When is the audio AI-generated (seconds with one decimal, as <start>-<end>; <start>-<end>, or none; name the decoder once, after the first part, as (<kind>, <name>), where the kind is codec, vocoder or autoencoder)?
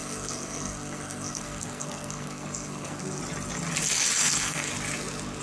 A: 0.0-3.2 (codec, SNAC); 4.2-4.7